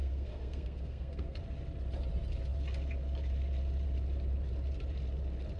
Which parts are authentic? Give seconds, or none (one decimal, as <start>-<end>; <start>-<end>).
1.4-5.6